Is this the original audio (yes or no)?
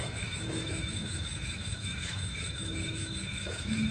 no